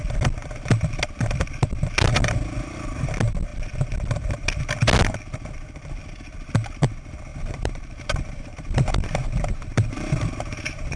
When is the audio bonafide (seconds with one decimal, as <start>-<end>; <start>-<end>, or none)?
0.0-7.3